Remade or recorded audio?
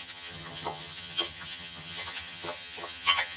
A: remade